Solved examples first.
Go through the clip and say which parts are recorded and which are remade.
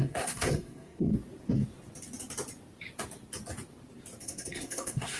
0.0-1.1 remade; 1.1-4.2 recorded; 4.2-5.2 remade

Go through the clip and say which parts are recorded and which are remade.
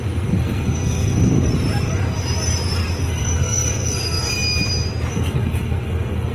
0.0-1.5 remade; 1.5-3.0 recorded; 3.0-4.3 remade; 4.3-5.1 recorded; 5.1-6.3 remade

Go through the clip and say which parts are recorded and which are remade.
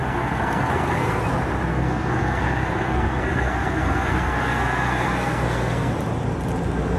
0.0-1.2 remade; 1.2-1.7 recorded; 1.7-5.9 remade; 5.9-7.0 recorded